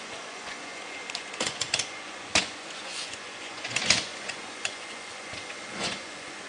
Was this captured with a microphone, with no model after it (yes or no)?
no